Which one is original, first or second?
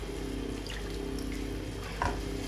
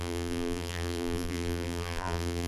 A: first